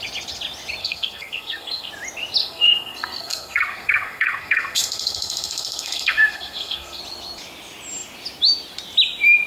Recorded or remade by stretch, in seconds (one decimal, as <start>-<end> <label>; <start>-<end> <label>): 0.0-0.8 recorded; 0.8-1.9 remade; 1.9-2.4 recorded; 2.4-7.0 remade; 7.0-9.5 recorded